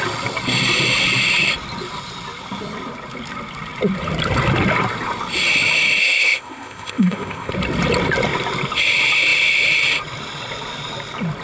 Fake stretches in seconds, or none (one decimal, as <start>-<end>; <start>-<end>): 6.0-7.5